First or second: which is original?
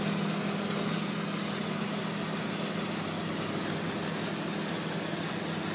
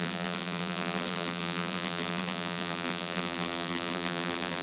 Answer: first